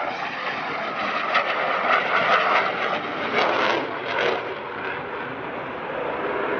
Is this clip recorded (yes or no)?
yes